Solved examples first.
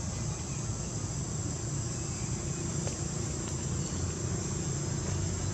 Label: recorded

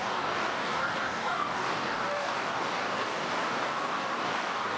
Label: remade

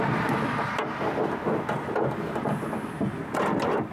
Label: recorded